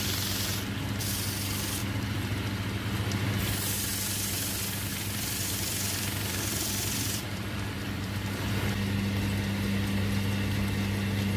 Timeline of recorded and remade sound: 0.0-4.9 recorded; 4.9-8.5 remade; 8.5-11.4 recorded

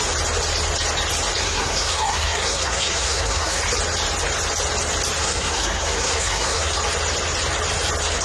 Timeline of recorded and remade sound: 0.0-1.4 recorded; 1.4-3.6 remade; 3.6-5.2 recorded; 5.2-6.7 remade; 6.7-8.2 recorded

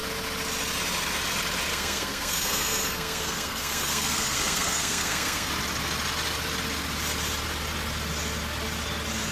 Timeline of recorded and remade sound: 0.0-1.7 recorded; 1.7-5.5 remade; 5.5-9.3 recorded

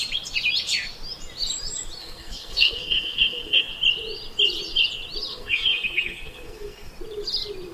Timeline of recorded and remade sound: 0.0-2.0 recorded; 2.0-3.7 remade; 3.7-5.3 recorded; 5.3-6.9 remade; 6.9-7.7 recorded

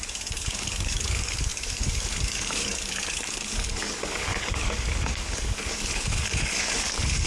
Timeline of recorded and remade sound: 0.0-7.3 remade